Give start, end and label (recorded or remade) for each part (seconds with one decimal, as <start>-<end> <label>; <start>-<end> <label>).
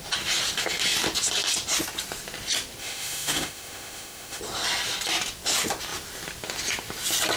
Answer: 0.0-2.8 recorded; 2.8-4.4 remade; 4.4-7.4 recorded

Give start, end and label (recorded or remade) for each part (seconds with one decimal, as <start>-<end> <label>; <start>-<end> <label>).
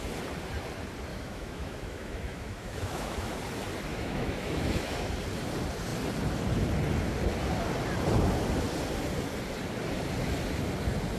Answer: 0.0-1.1 recorded; 1.1-3.3 remade; 3.3-3.9 recorded; 3.9-5.1 remade; 5.1-11.2 recorded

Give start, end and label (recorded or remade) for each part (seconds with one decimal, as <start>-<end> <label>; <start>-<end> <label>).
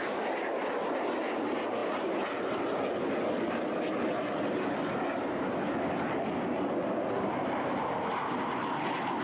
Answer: 0.0-9.2 recorded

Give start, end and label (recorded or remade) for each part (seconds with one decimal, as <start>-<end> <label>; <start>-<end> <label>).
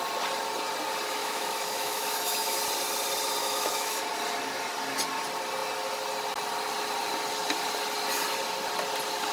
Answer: 0.0-1.2 recorded; 1.2-2.6 remade; 2.6-3.4 recorded; 3.4-4.0 remade; 4.0-9.3 recorded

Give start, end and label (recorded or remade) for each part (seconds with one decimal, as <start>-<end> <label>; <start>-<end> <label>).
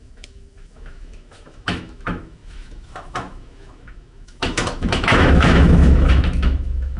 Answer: 0.0-7.0 remade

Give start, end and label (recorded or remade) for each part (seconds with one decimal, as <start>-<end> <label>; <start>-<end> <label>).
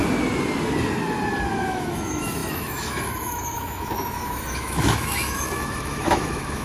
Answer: 0.0-1.5 recorded; 1.5-6.6 remade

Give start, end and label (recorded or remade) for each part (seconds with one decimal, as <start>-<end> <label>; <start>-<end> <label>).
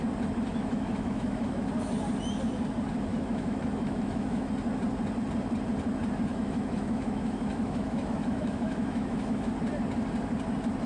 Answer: 0.0-0.5 recorded; 0.5-1.7 remade; 1.7-3.1 recorded; 3.1-4.5 remade; 4.5-6.3 recorded; 6.3-9.5 remade; 9.5-10.9 recorded